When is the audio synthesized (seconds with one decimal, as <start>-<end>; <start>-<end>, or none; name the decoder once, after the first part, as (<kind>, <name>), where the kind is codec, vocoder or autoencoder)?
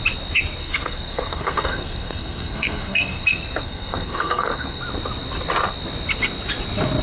0.6-4.8 (codec, SNAC)